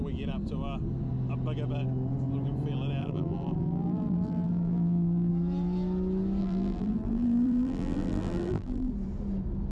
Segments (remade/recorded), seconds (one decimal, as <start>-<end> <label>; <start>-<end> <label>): 0.0-3.0 recorded; 3.0-5.3 remade; 5.3-6.4 recorded; 6.4-8.9 remade; 8.9-9.7 recorded